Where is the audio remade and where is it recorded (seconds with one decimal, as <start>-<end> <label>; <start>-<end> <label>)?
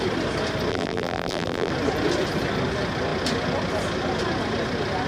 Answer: 0.0-0.7 recorded; 0.7-1.7 remade; 1.7-5.1 recorded